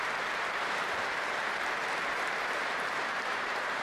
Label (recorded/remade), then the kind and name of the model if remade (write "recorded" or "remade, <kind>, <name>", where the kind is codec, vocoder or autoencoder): remade, vocoder, BigVGAN v2